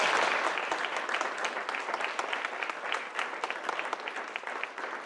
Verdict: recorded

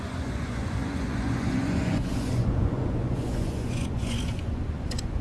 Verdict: remade